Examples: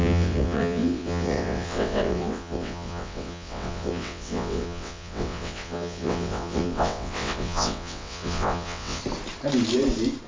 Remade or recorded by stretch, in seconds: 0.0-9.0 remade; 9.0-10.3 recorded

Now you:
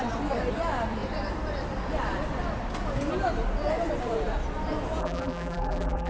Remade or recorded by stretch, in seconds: 0.0-5.0 recorded; 5.0-6.1 remade

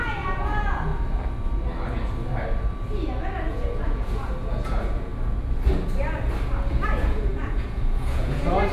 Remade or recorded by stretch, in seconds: 0.0-0.9 remade; 0.9-3.5 recorded; 3.5-5.1 remade; 5.1-6.7 recorded; 6.7-8.7 remade

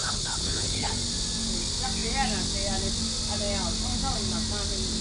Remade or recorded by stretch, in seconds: 0.0-0.9 remade; 0.9-5.0 recorded

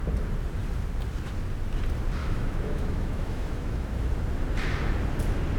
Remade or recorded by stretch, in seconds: 0.0-2.2 recorded; 2.2-4.1 remade; 4.1-5.6 recorded